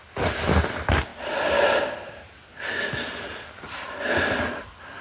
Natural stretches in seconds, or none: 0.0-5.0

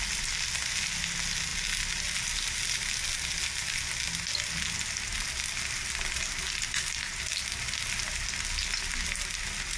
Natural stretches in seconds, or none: 0.0-9.8

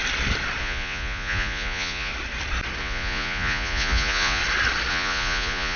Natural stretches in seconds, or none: 0.0-0.6; 2.1-2.8; 4.4-4.9

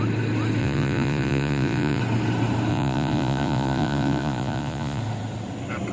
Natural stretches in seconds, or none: 0.0-0.6; 2.0-2.7; 5.0-5.9

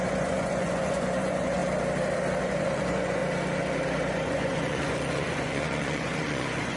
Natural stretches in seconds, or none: 1.6-2.4; 3.2-4.1

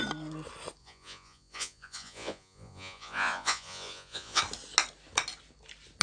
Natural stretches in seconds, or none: 0.0-0.8; 4.4-6.0

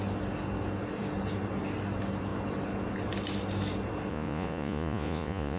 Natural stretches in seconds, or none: 0.0-4.1

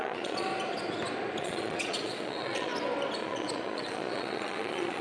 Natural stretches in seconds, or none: 0.5-1.4; 2.7-3.2